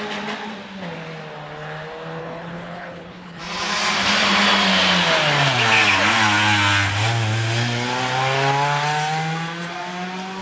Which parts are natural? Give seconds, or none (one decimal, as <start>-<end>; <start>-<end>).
0.0-2.2; 3.4-10.4